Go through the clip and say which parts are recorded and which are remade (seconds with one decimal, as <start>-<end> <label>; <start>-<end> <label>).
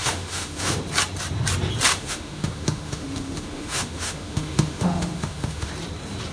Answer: 0.0-0.8 remade; 0.8-1.9 recorded; 1.9-5.7 remade; 5.7-6.3 recorded